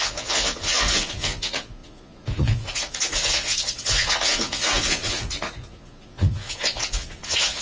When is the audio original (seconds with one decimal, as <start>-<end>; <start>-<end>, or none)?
none